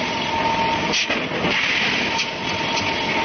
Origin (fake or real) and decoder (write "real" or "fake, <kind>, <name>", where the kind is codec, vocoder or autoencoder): real